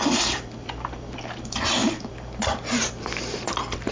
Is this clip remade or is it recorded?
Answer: remade